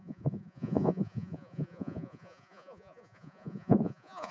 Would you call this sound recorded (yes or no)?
no